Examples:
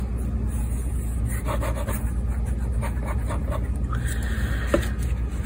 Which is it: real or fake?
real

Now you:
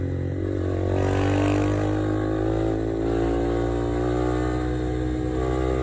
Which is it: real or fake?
real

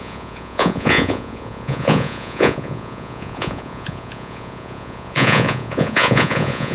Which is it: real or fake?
fake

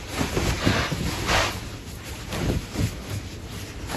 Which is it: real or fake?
real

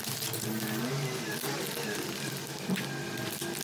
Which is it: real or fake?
real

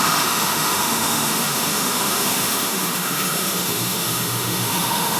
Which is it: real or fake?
fake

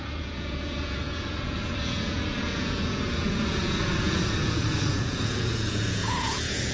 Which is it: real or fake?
fake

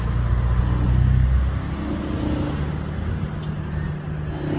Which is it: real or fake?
real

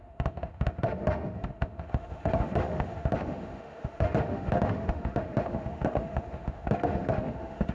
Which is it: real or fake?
fake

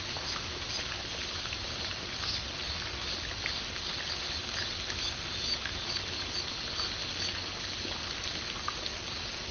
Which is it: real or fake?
real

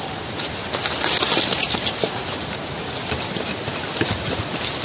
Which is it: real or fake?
real